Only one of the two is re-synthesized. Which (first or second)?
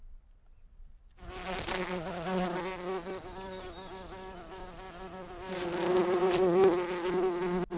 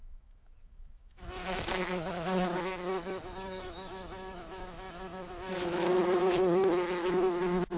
second